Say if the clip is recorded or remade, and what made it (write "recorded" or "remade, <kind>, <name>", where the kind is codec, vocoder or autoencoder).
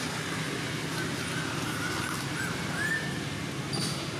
recorded